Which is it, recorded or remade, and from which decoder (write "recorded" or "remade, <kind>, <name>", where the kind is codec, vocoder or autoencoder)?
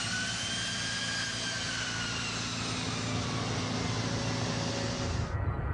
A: recorded